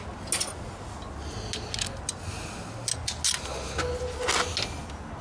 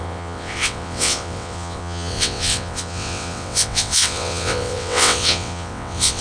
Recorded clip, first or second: first